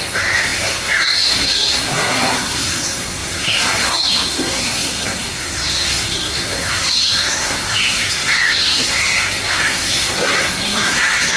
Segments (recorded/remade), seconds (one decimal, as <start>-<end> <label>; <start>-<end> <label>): 0.0-11.4 remade